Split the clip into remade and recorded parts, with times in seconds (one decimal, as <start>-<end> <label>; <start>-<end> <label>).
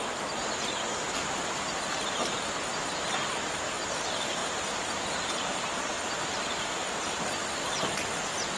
0.0-4.4 recorded; 4.4-5.8 remade; 5.8-8.6 recorded